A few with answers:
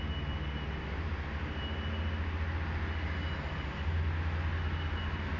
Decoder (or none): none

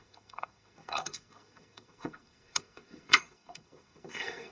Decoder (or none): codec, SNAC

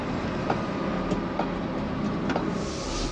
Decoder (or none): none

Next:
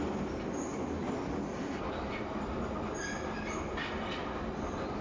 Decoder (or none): none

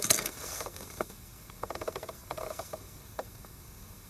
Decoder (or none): codec, SNAC